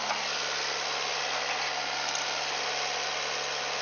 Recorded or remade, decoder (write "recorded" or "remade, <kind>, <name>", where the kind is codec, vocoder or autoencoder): recorded